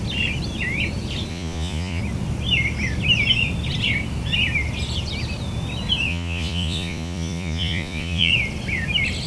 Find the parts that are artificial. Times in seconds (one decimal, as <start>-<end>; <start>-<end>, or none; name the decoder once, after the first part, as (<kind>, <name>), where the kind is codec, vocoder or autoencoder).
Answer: 1.3-2.0 (vocoder, Vocos); 6.1-8.3

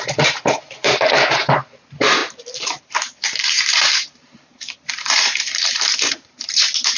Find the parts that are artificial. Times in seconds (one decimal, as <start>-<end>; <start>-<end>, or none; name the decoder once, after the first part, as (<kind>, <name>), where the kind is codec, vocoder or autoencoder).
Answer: 0.0-2.2 (vocoder, BigVGAN v2); 2.8-7.0

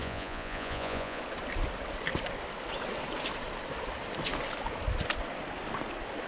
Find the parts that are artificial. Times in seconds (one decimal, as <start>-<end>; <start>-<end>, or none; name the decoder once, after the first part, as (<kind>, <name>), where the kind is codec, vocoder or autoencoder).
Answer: 0.0-1.2 (vocoder, Vocos)

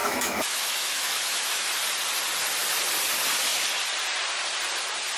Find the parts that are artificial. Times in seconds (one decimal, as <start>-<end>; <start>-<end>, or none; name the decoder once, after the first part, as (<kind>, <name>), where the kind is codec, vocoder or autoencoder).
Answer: 0.0-1.7 (autoencoder, DAC-VAE)

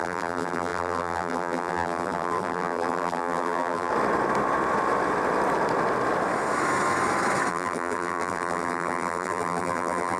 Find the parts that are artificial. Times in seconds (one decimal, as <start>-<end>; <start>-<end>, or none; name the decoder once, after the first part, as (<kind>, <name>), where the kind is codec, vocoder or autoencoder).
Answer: 0.0-3.9 (vocoder, BigVGAN v2); 7.5-10.2